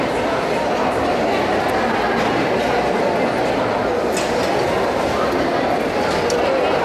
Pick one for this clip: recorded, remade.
recorded